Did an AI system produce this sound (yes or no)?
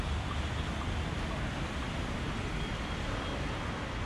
no